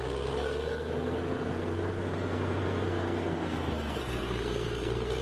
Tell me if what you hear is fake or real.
fake